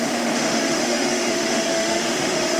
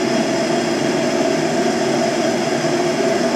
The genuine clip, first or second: second